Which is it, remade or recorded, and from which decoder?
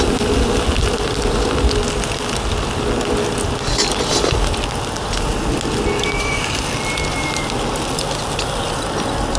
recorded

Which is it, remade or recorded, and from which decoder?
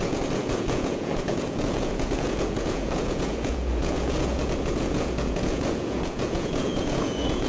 remade, vocoder, Vocos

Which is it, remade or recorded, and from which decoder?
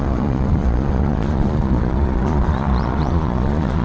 remade, vocoder, Vocos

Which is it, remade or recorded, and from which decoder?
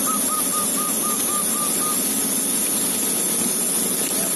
recorded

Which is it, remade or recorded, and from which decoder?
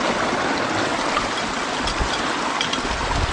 recorded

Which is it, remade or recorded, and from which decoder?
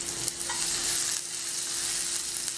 recorded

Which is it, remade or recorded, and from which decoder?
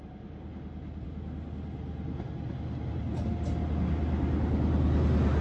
recorded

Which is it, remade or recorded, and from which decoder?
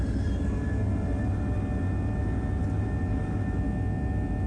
recorded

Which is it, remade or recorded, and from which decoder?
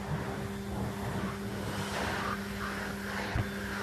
recorded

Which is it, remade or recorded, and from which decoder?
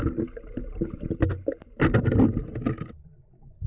recorded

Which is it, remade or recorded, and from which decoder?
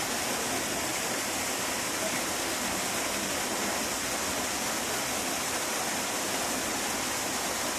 recorded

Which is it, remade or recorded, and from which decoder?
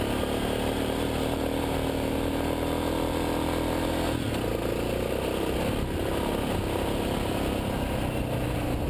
recorded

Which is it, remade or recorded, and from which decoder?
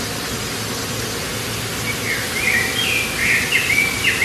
recorded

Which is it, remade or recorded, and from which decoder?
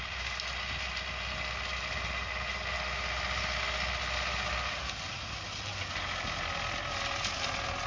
recorded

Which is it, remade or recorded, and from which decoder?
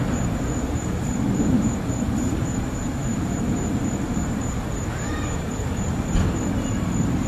remade, vocoder, BigVGAN v2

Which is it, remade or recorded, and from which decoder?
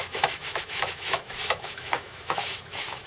remade, autoencoder, DAC-VAE